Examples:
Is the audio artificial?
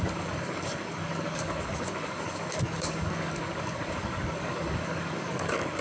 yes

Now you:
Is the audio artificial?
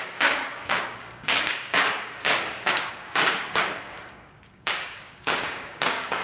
yes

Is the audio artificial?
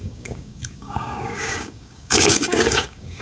yes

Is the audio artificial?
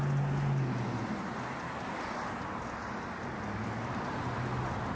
no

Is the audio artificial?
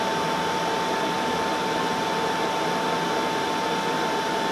no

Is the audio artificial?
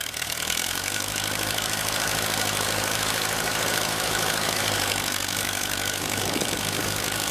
yes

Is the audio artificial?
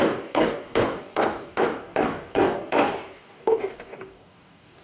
yes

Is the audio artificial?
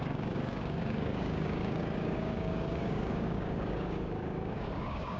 yes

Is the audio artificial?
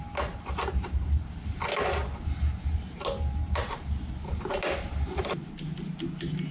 no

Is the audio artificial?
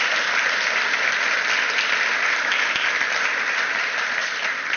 no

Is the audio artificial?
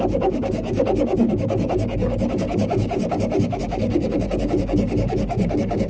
yes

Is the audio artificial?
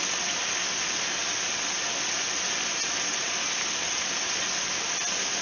no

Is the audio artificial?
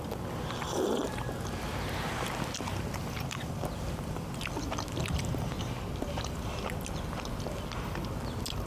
no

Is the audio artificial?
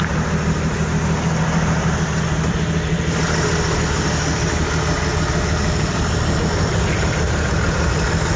no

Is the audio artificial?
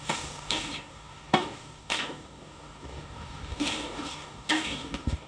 yes